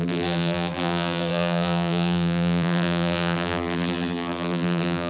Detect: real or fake fake